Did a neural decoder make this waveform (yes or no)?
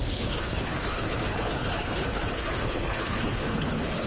yes